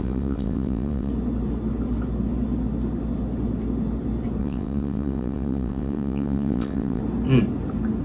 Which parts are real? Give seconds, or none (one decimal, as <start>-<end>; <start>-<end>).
1.1-4.4; 7.0-8.0